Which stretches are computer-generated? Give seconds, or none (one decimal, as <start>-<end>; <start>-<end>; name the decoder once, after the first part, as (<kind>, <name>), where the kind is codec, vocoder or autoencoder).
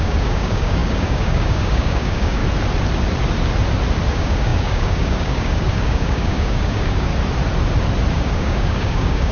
0.0-2.4 (codec, DAC); 4.1-7.1; 8.1-9.3